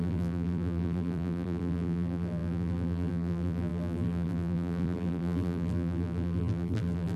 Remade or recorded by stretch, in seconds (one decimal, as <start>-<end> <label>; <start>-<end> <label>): 0.0-7.2 remade